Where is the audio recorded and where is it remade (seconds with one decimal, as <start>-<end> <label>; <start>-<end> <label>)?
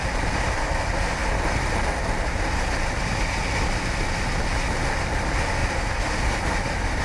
0.0-7.0 recorded